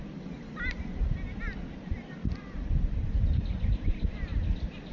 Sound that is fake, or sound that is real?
real